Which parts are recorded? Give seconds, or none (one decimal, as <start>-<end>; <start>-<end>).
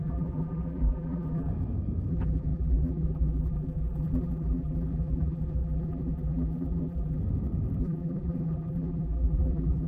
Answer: 1.5-2.1; 7.2-7.8